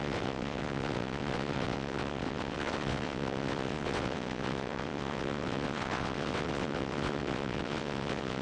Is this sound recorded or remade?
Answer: remade